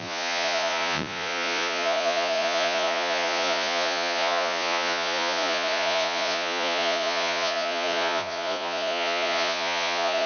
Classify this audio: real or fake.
fake